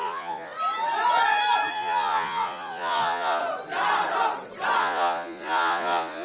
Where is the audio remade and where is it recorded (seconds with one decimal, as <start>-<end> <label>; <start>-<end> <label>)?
0.0-0.5 remade; 0.5-1.7 recorded; 1.7-3.4 remade; 3.4-4.8 recorded; 4.8-6.2 remade